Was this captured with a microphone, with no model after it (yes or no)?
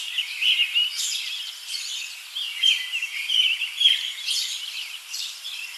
no